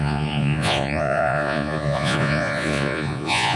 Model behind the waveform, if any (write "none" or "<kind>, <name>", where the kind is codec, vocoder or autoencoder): vocoder, Vocos